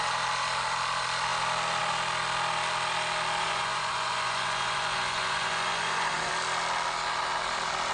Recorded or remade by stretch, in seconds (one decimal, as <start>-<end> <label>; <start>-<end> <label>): 0.0-3.4 recorded; 3.4-6.3 remade; 6.3-7.9 recorded